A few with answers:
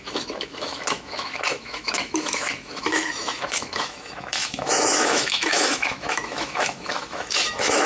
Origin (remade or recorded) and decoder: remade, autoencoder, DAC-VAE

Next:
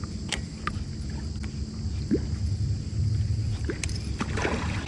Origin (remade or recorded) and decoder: recorded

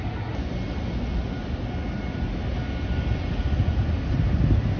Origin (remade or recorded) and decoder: recorded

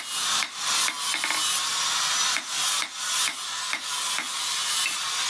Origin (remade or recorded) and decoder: recorded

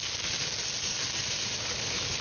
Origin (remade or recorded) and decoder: recorded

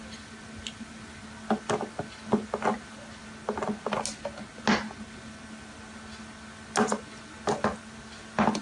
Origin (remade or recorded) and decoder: recorded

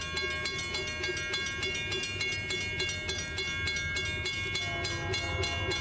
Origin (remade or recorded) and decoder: recorded